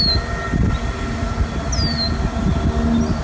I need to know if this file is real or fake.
real